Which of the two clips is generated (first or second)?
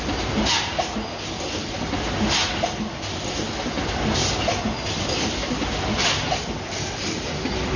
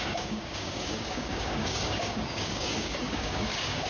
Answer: second